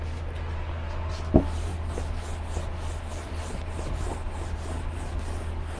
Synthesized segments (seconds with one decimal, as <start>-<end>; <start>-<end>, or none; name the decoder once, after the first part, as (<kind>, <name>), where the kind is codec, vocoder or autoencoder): none